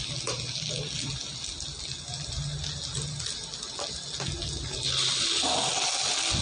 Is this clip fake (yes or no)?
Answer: no